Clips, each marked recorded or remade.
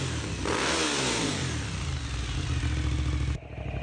recorded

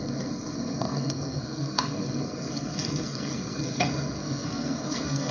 remade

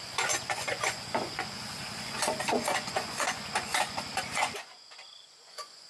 remade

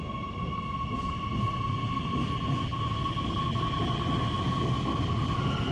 recorded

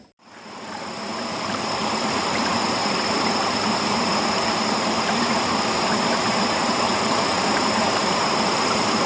remade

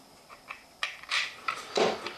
remade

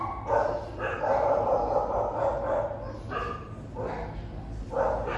recorded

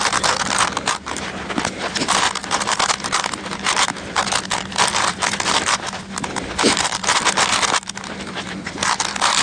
recorded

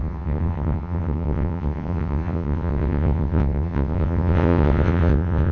remade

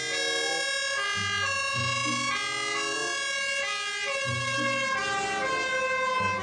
recorded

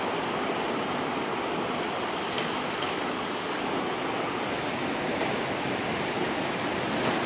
recorded